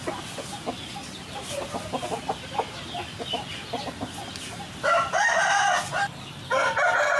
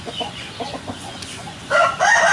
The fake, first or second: second